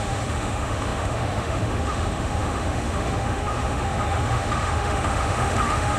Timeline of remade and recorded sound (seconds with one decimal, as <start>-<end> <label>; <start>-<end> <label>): 0.0-6.0 remade